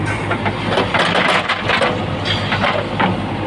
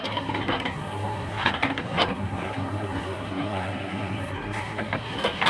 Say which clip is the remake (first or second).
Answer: second